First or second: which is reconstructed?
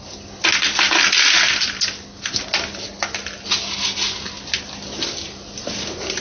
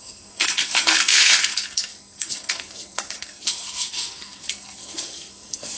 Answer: second